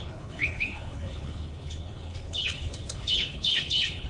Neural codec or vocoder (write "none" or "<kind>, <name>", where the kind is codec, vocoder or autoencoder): codec, HILCodec